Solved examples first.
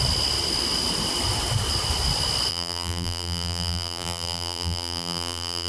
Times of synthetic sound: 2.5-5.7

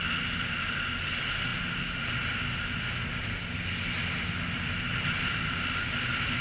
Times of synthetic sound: none